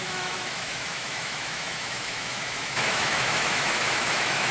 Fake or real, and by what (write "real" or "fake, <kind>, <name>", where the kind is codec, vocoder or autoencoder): fake, autoencoder, DAC-VAE